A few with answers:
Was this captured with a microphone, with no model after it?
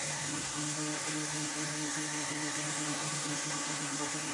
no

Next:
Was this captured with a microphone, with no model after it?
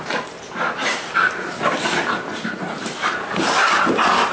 yes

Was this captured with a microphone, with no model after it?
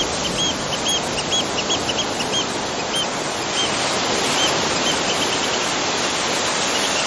yes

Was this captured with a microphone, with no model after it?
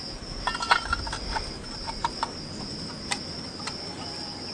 yes